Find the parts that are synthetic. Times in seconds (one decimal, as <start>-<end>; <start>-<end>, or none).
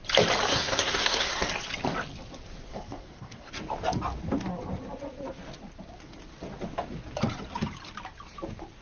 0.5-1.5; 2.7-3.5